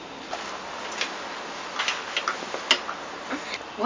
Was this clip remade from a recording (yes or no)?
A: no